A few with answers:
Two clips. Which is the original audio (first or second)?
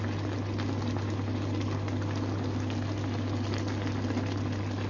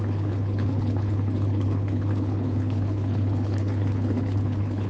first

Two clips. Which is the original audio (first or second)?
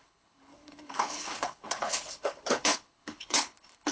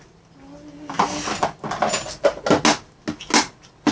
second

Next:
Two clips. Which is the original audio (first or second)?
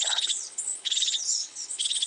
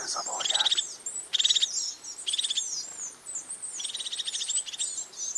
second